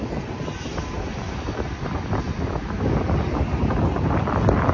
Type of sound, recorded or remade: recorded